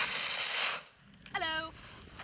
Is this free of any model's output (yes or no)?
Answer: yes